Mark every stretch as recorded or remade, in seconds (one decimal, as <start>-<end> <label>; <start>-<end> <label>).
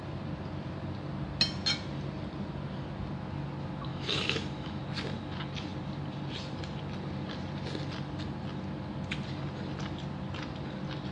0.0-3.9 recorded; 3.9-4.8 remade; 4.8-11.1 recorded